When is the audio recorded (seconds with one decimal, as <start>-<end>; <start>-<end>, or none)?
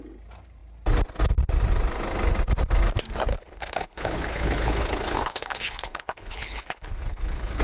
0.0-3.3